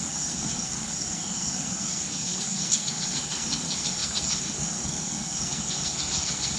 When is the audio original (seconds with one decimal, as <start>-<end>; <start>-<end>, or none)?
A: none